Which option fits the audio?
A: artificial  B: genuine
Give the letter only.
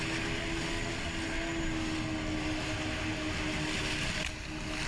B